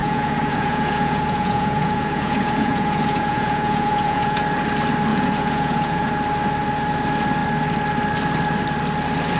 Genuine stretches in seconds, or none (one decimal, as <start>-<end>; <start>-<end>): 4.4-5.1; 6.1-9.4